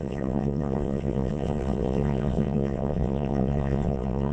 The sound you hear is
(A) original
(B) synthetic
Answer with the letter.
B